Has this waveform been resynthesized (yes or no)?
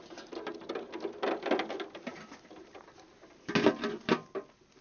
no